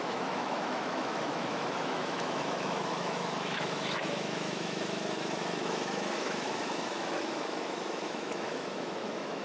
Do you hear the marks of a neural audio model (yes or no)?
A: yes